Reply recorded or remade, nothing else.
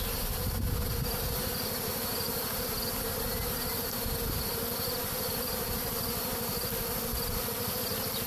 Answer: recorded